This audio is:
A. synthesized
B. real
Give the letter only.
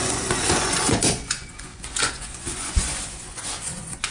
A